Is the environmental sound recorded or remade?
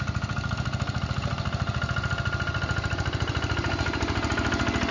recorded